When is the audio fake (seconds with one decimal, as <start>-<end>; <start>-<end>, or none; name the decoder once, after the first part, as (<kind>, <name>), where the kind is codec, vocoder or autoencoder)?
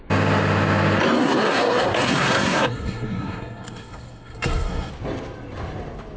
1.2-4.9 (codec, SNAC)